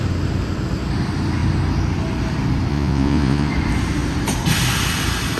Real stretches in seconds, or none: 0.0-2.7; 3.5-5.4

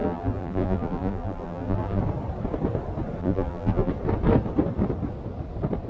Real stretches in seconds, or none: 2.0-3.2; 3.9-5.9

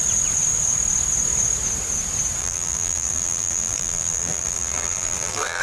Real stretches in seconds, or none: 0.0-2.4

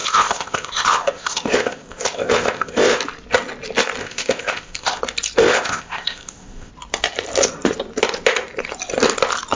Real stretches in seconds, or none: 3.0-4.0; 5.0-5.4; 6.7-9.6

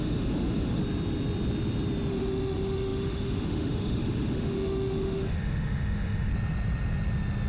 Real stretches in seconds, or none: 0.8-2.1; 6.3-7.5